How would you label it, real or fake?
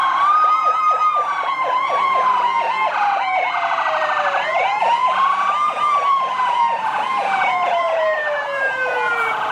fake